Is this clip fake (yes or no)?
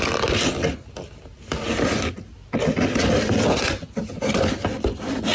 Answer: no